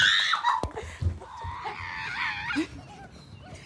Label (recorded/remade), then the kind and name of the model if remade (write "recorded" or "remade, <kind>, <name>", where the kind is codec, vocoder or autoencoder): recorded